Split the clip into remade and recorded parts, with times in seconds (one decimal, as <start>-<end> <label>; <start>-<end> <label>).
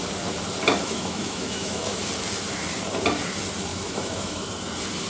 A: 0.0-0.8 recorded; 0.8-2.0 remade; 2.0-3.7 recorded; 3.7-4.5 remade; 4.5-5.1 recorded